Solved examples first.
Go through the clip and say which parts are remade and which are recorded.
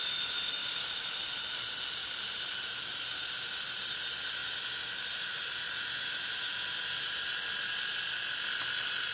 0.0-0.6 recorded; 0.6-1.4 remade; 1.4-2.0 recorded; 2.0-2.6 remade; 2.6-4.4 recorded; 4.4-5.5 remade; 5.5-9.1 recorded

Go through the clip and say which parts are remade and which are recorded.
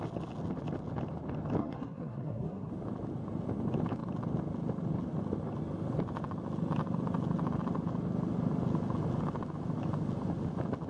0.0-1.6 recorded; 1.6-2.7 remade; 2.7-10.9 recorded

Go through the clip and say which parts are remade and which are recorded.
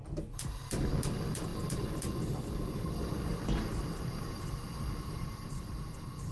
0.0-6.3 recorded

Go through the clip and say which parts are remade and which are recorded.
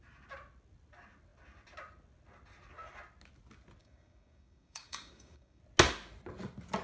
0.0-3.8 recorded; 3.8-5.6 remade; 5.6-6.8 recorded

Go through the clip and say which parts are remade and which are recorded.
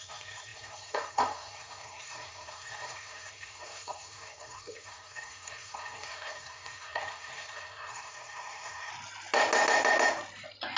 0.0-8.9 remade; 8.9-10.8 recorded